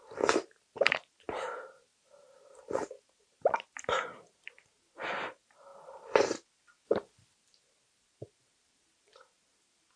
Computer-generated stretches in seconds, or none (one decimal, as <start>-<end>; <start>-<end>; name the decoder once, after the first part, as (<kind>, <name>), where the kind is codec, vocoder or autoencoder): 0.0-10.0 (vocoder, BigVGAN v2)